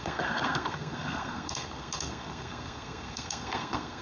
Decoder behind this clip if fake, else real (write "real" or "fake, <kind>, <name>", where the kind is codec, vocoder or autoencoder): fake, codec, SNAC